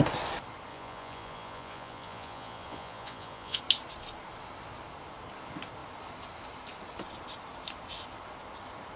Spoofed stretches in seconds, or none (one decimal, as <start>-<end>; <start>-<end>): 0.7-3.6